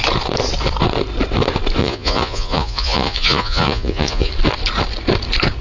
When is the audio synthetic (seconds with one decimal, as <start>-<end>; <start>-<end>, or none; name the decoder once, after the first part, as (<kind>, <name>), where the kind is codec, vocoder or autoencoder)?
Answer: 1.8-4.3 (vocoder, Vocos)